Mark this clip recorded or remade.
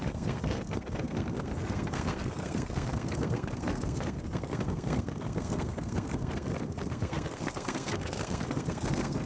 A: remade